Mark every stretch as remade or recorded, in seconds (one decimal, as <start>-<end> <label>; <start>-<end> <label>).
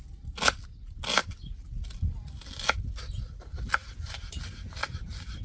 0.0-5.4 recorded